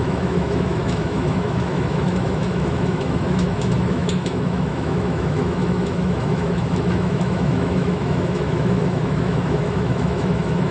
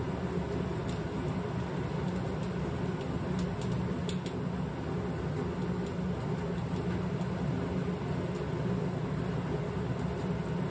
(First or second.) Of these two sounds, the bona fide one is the second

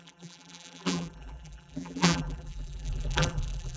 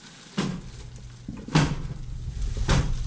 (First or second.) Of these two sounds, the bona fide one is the second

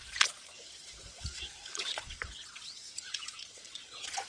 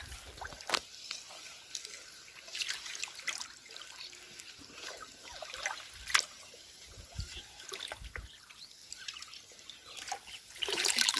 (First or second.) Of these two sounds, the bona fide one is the second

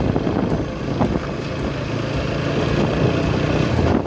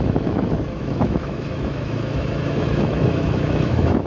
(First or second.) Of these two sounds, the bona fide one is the first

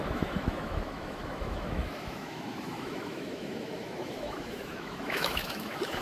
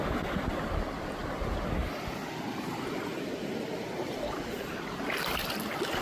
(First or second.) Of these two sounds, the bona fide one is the second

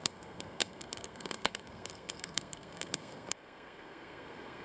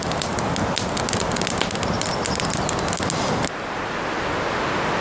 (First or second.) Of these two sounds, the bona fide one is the second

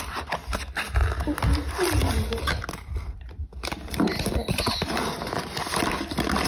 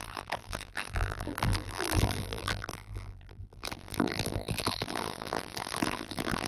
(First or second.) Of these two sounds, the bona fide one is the first